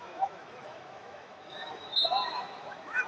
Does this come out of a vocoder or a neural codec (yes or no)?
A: yes